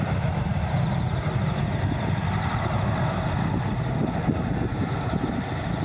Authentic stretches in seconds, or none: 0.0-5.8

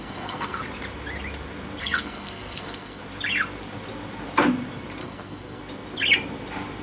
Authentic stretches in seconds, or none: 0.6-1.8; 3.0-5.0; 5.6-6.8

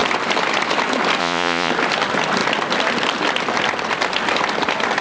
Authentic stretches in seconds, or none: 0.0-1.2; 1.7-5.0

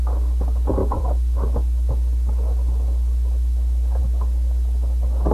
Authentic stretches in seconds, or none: 0.0-0.8; 4.0-5.3

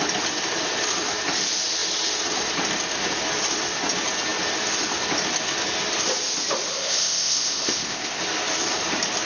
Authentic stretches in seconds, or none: 0.0-6.7; 8.2-9.2